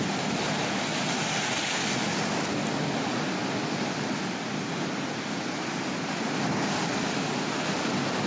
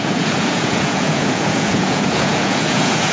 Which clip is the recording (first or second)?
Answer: first